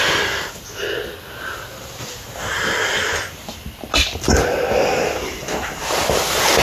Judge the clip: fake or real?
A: real